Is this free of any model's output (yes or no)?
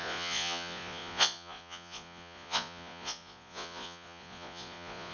no